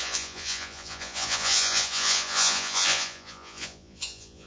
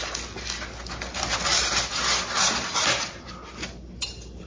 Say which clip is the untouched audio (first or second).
second